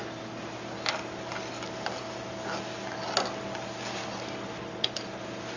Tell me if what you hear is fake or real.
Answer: real